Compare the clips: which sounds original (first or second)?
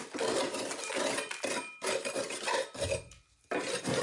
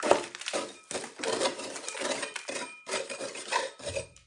first